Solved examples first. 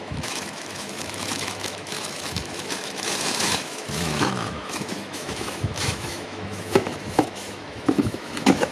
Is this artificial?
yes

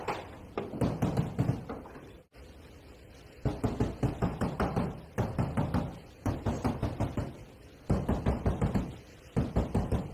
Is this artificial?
no